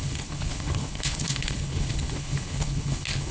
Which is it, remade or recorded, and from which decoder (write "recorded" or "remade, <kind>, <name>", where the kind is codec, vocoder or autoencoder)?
remade, codec, HILCodec